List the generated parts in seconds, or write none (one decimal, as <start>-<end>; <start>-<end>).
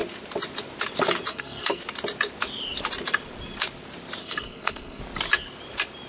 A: 1.3-1.8; 4.2-5.0